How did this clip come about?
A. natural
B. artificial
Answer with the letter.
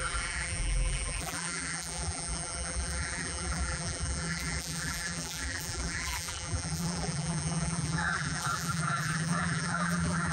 B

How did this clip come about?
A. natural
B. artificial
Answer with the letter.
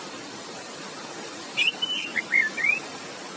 A